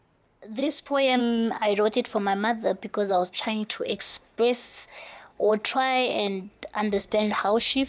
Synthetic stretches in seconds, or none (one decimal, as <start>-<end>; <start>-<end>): 0.6-1.2; 3.1-5.5; 7.0-7.9